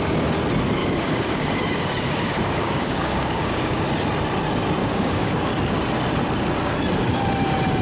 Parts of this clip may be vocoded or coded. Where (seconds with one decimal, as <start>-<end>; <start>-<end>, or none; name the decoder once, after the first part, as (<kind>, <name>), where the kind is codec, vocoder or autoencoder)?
0.8-3.8 (codec, DAC); 4.8-5.3